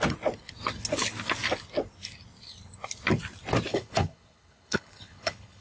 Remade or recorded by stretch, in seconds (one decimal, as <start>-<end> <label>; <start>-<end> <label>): 0.0-3.7 recorded; 3.7-5.6 remade